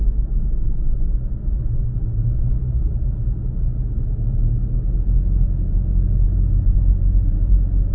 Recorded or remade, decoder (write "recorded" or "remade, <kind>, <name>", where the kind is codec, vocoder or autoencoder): recorded